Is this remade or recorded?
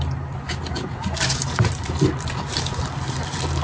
recorded